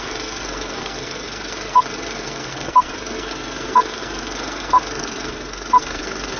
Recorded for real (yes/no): no